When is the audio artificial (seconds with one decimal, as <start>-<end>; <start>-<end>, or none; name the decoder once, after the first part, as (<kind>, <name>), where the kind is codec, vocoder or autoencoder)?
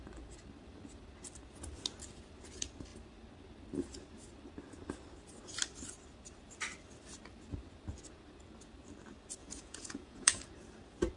9.4-10.4 (vocoder, Vocos)